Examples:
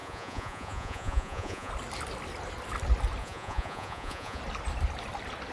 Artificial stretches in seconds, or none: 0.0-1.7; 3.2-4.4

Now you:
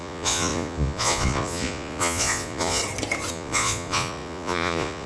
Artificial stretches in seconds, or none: 0.0-2.8; 3.3-5.1

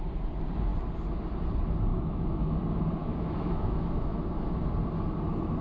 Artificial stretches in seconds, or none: 1.9-2.5; 3.0-4.6

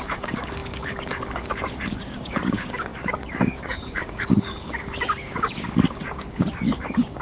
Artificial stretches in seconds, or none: 0.0-7.2

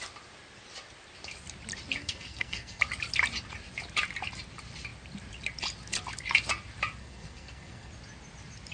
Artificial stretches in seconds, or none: 2.0-2.8; 7.0-7.9

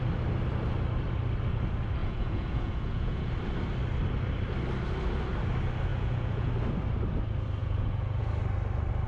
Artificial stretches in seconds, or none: 2.0-3.3; 5.9-6.5; 7.6-8.3